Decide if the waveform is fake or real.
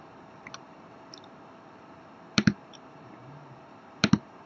fake